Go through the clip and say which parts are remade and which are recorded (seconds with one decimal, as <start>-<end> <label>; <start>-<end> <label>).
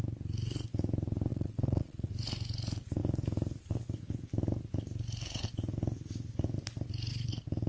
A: 0.0-1.3 recorded; 1.3-2.1 remade; 2.1-7.7 recorded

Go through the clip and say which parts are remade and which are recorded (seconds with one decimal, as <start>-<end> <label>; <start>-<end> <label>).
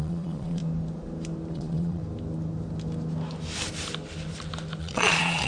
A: 0.0-0.6 remade; 0.6-1.5 recorded; 1.5-2.0 remade; 2.0-4.8 recorded; 4.8-5.5 remade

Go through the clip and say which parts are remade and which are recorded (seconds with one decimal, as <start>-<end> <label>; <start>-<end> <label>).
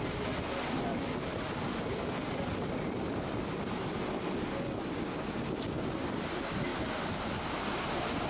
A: 0.0-6.7 remade; 6.7-8.3 recorded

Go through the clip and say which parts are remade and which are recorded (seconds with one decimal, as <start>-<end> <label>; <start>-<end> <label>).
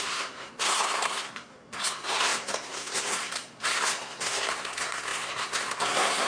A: 0.0-6.3 remade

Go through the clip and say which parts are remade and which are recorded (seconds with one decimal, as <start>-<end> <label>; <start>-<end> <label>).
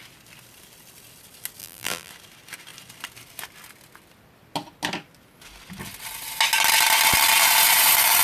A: 0.0-1.6 recorded; 1.6-2.1 remade; 2.1-8.2 recorded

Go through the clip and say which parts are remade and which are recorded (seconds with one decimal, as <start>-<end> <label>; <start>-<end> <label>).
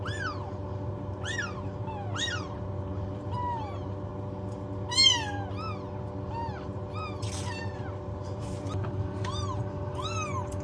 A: 0.0-4.1 remade; 4.1-6.3 recorded; 6.3-10.6 remade